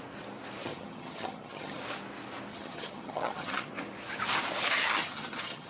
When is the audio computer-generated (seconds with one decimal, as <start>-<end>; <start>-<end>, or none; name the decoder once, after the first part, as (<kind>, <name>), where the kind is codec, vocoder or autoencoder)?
0.6-1.8 (vocoder, HiFi-GAN); 2.5-3.7; 4.8-5.7